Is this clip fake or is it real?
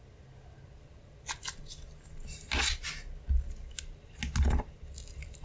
real